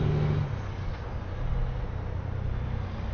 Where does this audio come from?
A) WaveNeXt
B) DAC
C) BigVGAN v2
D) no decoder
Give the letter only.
D